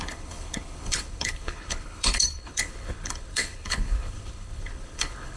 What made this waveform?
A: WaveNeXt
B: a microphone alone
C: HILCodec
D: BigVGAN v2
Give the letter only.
C